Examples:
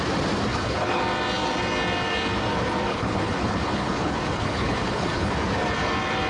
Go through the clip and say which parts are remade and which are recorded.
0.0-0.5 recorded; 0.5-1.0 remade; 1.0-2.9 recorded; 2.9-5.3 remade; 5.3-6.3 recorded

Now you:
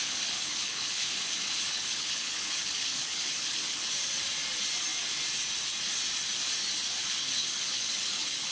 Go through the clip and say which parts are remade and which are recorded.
0.0-3.9 remade; 3.9-7.0 recorded; 7.0-8.5 remade